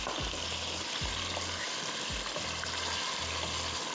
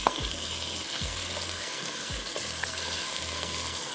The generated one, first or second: second